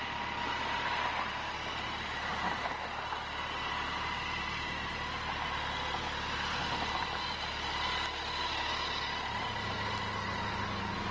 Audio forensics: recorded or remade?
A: recorded